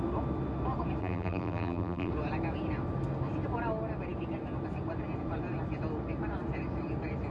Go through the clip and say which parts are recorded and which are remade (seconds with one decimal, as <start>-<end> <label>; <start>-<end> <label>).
0.0-1.0 recorded; 1.0-2.1 remade; 2.1-7.3 recorded